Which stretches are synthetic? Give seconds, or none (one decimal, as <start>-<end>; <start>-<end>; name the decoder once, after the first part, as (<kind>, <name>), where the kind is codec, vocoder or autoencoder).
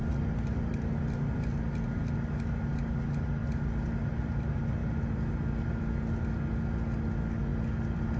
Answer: none